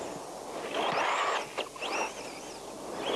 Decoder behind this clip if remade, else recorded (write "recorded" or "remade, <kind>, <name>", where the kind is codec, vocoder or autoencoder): recorded